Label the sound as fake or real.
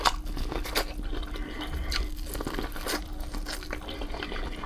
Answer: real